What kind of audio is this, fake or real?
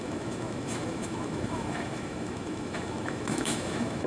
fake